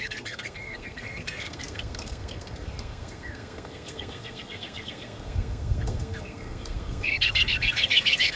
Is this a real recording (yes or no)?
no